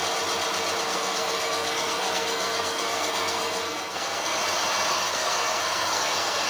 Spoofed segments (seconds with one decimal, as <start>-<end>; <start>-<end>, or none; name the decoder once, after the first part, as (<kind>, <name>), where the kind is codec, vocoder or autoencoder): 0.8-4.4 (codec, SNAC); 4.9-6.5